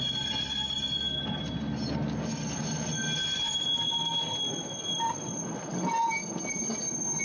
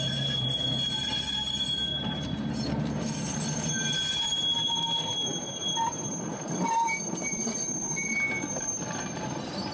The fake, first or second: second